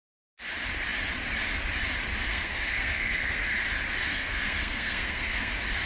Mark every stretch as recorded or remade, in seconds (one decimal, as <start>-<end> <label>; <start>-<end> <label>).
0.0-2.3 recorded; 2.3-3.5 remade; 3.5-4.1 recorded; 4.1-5.5 remade; 5.5-5.9 recorded